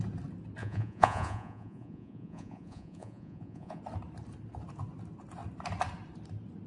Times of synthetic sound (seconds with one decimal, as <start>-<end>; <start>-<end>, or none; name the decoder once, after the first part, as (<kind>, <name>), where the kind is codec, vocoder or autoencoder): 0.6-3.8 (vocoder, Vocos)